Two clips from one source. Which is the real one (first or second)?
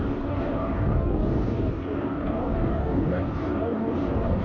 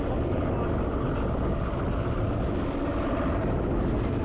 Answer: second